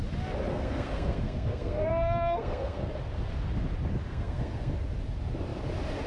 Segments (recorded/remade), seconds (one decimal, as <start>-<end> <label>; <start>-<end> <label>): 0.0-0.5 recorded; 0.5-2.9 remade; 2.9-4.1 recorded; 4.1-4.7 remade; 4.7-6.1 recorded